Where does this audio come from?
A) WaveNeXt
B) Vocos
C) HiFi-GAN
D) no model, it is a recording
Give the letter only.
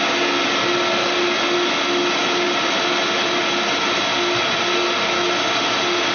D